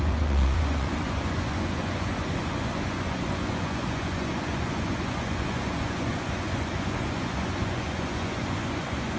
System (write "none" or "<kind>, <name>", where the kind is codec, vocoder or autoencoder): vocoder, Vocos